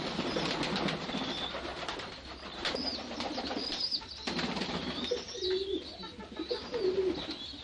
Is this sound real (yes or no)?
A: yes